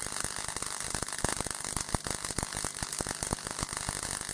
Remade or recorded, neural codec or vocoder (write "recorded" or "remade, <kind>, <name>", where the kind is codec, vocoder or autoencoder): recorded